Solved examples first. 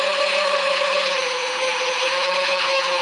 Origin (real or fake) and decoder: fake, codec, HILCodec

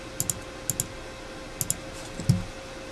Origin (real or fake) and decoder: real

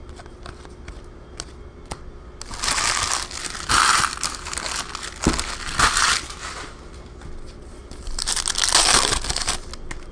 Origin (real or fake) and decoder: real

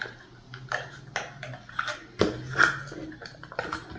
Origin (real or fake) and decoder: real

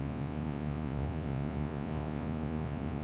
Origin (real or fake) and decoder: fake, vocoder, Vocos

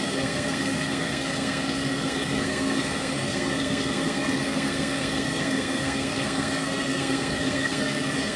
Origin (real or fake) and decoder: fake, codec, SNAC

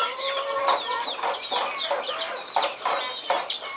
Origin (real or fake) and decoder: real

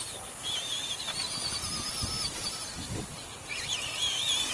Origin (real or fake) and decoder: real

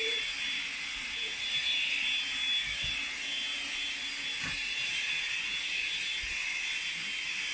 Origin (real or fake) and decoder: real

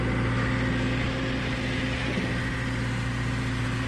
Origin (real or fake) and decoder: real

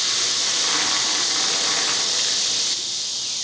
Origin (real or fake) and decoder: real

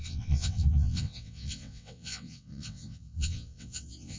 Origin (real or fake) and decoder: fake, vocoder, WaveNeXt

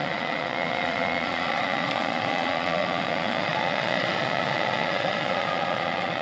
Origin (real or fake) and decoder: fake, vocoder, Vocos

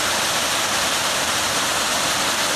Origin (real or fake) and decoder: real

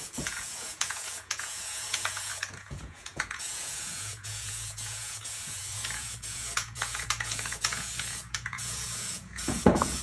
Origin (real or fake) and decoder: fake, vocoder, Vocos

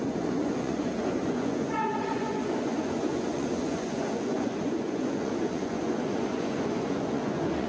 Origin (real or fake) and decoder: fake, vocoder, Vocos